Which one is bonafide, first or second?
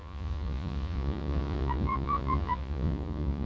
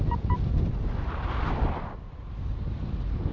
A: second